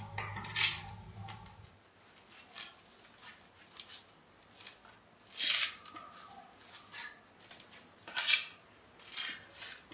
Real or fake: real